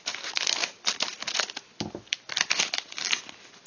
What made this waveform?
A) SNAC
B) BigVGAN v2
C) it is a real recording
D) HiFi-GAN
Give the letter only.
C